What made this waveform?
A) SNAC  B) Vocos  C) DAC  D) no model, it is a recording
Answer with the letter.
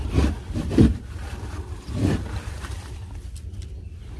D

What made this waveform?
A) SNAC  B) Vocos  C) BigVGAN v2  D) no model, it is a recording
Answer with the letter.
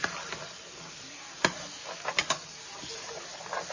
D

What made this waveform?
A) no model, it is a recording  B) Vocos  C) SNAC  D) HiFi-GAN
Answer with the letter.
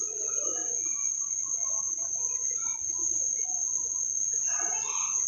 A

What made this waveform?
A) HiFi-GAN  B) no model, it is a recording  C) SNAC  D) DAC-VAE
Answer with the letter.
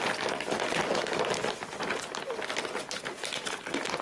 B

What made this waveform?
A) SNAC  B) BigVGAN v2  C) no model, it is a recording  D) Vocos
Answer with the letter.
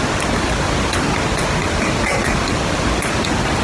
C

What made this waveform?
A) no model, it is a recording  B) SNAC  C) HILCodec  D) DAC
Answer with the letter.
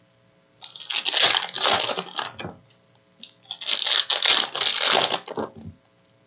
A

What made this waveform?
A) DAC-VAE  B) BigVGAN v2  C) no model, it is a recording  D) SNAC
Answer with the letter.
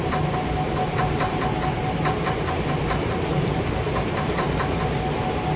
C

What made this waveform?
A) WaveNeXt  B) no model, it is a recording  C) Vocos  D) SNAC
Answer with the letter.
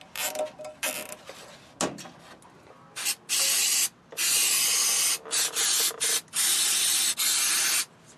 B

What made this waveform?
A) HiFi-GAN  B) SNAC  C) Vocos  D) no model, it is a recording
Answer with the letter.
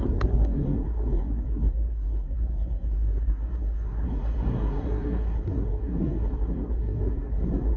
B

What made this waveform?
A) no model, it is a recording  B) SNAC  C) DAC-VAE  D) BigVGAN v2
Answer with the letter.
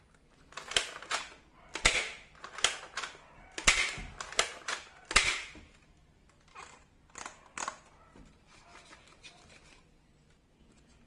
A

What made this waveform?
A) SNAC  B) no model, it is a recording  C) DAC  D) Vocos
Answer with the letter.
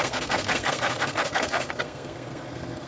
A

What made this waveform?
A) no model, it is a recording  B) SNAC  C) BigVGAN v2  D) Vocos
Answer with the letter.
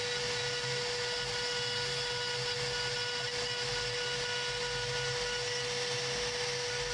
A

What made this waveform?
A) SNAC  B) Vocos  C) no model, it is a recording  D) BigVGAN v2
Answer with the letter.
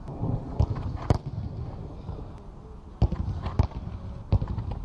C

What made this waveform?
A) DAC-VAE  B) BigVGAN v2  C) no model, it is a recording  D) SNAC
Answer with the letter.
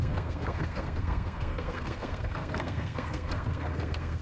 D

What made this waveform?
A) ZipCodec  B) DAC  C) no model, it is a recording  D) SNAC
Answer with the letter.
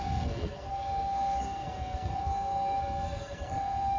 D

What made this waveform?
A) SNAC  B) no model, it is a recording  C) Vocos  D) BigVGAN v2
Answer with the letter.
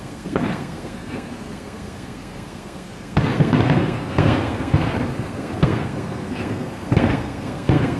A